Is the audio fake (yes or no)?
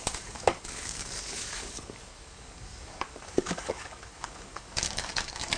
yes